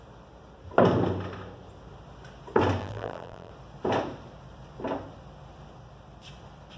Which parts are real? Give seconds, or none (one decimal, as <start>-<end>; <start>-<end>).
0.0-2.8; 3.5-6.8